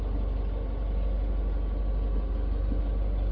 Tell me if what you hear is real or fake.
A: real